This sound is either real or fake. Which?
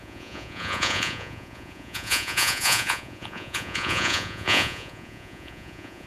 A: fake